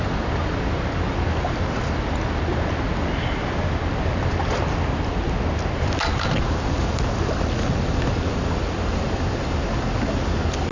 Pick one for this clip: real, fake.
real